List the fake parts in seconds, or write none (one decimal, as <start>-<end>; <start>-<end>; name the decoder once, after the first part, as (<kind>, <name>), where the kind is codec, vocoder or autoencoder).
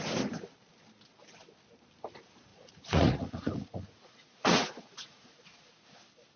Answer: 2.5-5.4 (vocoder, Vocos)